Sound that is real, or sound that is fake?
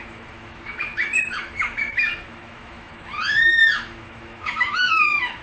fake